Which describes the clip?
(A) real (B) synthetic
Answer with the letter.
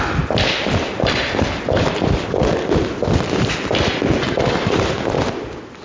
A